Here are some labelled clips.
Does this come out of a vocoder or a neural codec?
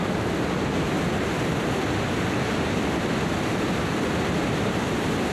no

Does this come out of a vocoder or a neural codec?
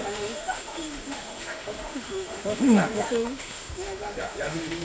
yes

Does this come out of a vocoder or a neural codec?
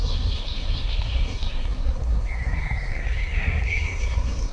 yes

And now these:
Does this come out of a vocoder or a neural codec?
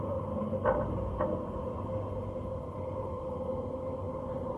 no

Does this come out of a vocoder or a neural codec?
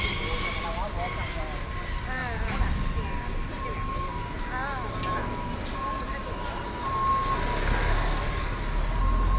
no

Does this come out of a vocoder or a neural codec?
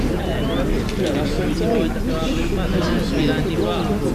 no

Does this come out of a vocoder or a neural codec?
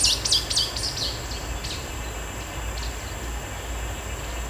no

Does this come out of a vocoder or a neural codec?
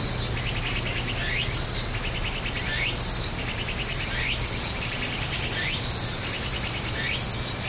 no